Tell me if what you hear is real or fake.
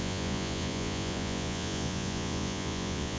fake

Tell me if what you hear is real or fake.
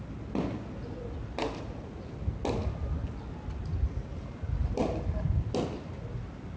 real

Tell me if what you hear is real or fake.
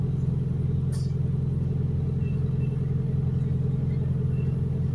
real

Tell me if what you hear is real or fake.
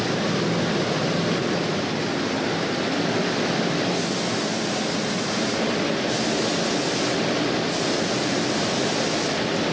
real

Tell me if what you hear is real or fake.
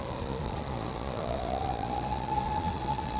fake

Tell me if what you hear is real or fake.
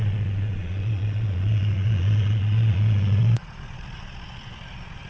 fake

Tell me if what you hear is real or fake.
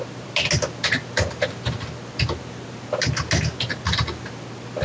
real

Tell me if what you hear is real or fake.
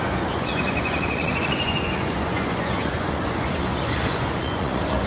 fake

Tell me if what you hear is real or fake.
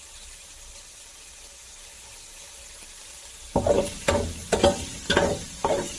real